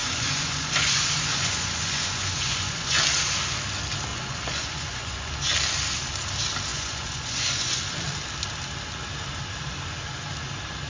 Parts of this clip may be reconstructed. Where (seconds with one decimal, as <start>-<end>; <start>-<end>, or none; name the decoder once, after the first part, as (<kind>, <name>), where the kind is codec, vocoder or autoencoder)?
0.0-3.0 (vocoder, Vocos); 4.1-5.3; 6.7-7.8